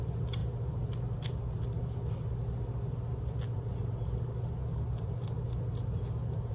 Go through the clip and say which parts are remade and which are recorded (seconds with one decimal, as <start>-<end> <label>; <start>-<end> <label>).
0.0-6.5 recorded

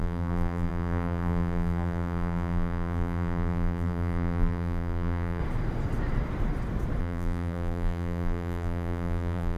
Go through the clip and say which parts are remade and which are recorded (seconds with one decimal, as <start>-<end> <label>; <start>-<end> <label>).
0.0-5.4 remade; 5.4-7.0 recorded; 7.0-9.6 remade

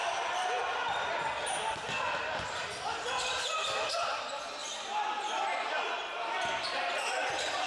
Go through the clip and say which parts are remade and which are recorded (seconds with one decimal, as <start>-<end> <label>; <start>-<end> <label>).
0.0-3.9 recorded; 3.9-4.6 remade; 4.6-5.7 recorded; 5.7-7.7 remade